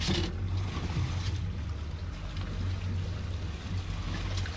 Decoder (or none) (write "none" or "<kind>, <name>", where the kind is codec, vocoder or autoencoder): none